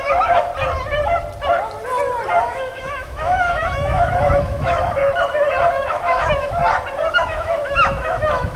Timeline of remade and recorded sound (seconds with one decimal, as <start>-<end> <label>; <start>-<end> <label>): 0.0-0.5 remade; 0.5-2.5 recorded; 2.5-5.0 remade; 5.0-5.7 recorded; 5.7-6.6 remade; 6.6-7.1 recorded; 7.1-8.6 remade